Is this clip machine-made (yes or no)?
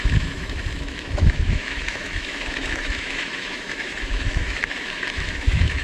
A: yes